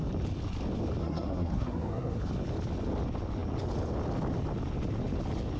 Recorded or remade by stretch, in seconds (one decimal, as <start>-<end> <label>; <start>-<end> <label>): 0.0-1.0 recorded; 1.0-2.2 remade; 2.2-5.6 recorded